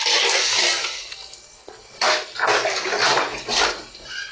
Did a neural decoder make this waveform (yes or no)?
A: no